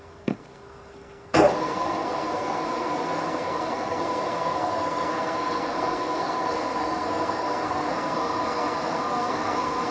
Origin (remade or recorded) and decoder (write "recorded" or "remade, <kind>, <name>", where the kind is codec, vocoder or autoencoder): remade, codec, SNAC